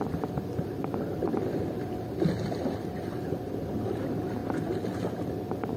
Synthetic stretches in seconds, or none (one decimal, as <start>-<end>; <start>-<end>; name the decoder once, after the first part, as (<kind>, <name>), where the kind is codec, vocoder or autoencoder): none